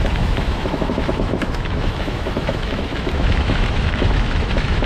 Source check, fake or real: fake